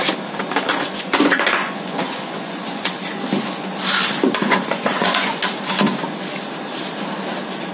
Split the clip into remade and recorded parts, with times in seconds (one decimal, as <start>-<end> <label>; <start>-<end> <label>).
0.0-0.7 recorded; 0.7-3.2 remade; 3.2-4.4 recorded; 4.4-5.4 remade; 5.4-7.7 recorded